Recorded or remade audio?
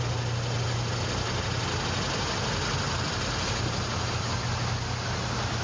recorded